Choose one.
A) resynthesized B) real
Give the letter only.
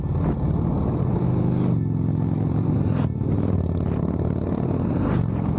B